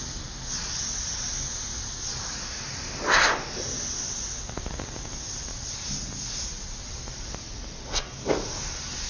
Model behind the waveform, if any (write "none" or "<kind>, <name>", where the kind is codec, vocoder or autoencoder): none